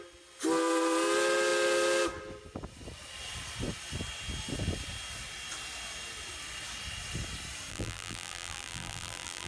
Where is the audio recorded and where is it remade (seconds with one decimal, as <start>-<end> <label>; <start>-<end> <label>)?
0.0-7.7 recorded; 7.7-9.5 remade